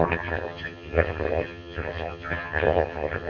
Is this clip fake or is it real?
fake